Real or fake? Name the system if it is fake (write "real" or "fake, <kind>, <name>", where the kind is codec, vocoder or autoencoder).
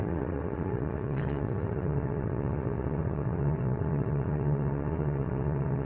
fake, vocoder, WaveNeXt